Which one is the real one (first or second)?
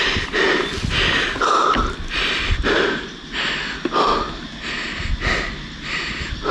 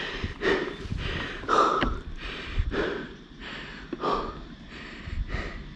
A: first